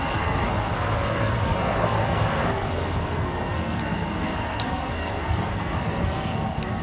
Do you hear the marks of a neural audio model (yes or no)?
yes